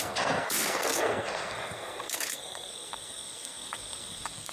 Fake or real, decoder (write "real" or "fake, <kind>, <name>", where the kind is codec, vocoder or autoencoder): fake, codec, SNAC